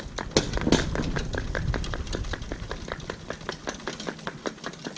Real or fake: real